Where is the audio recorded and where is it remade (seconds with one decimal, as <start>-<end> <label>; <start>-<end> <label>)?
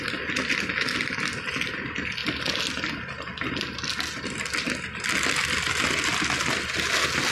0.0-7.3 recorded